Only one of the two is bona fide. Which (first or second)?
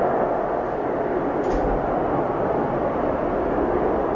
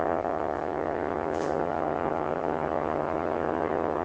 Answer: first